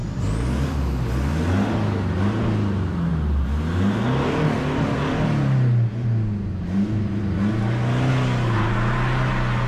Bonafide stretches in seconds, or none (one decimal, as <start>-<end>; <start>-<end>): 0.0-9.7